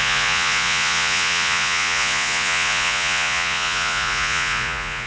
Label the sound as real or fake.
fake